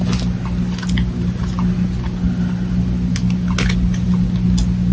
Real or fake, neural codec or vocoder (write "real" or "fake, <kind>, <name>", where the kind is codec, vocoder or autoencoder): real